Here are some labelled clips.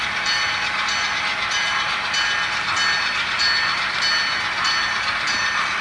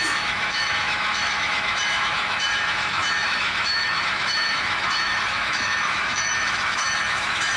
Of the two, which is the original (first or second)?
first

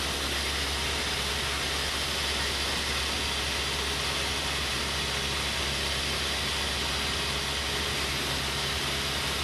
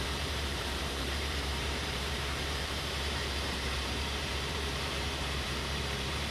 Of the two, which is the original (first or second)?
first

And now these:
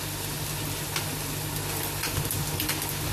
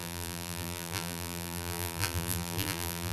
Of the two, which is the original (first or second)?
first